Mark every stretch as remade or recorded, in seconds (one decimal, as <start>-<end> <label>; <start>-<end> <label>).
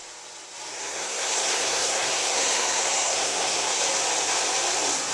0.0-0.7 recorded; 0.7-3.8 remade; 3.8-5.1 recorded